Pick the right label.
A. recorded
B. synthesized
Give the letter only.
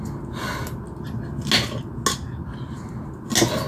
A